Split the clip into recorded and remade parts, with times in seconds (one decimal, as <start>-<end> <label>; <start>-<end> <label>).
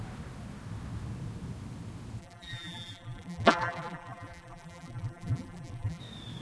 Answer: 0.0-2.2 recorded; 2.2-6.0 remade; 6.0-6.4 recorded